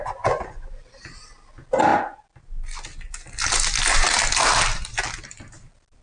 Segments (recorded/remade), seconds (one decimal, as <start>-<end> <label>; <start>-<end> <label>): 0.0-6.0 recorded